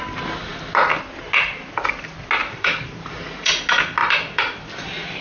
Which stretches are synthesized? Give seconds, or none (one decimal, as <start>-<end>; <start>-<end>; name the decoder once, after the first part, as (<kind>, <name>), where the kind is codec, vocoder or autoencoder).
2.4-3.5 (vocoder, BigVGAN v2); 4.0-4.6